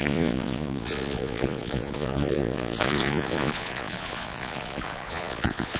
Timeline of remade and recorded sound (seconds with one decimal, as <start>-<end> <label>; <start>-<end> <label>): 0.0-5.8 remade